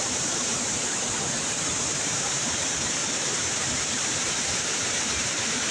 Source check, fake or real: fake